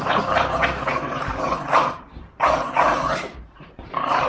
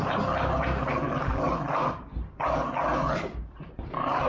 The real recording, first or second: second